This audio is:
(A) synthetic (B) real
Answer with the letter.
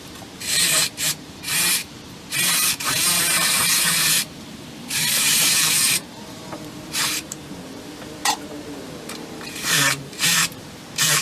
A